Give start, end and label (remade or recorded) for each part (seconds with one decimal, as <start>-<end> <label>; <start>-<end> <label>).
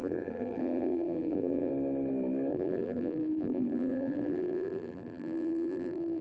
0.0-1.7 remade; 1.7-2.5 recorded; 2.5-6.2 remade